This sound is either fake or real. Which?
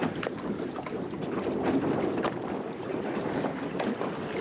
real